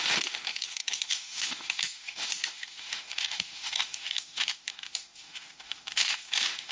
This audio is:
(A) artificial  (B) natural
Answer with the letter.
A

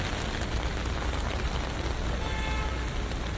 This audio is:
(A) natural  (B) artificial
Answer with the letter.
A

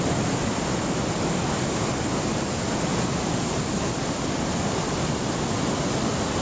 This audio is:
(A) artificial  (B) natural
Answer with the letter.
B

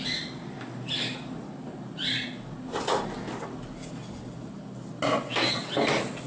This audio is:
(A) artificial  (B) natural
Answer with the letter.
B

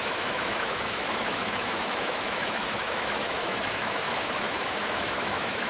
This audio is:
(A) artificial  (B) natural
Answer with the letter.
A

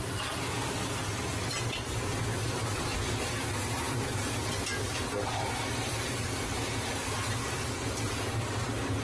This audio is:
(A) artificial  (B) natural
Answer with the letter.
B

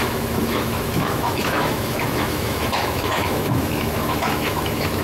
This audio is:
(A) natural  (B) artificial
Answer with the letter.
B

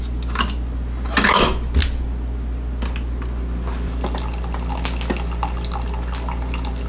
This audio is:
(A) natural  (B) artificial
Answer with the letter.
A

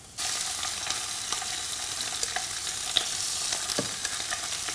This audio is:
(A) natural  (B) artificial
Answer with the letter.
A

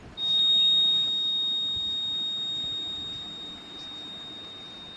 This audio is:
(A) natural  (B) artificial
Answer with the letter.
A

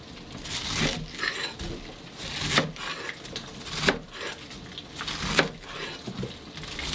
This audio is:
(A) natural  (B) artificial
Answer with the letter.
A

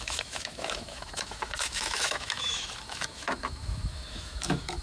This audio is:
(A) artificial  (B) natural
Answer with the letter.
A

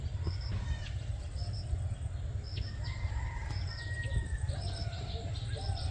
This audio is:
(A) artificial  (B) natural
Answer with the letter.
B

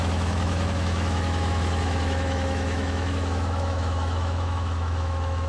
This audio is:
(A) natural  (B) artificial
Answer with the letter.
B